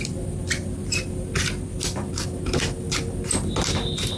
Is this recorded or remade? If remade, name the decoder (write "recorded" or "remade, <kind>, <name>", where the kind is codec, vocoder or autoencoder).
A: recorded